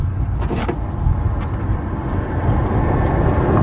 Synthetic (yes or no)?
no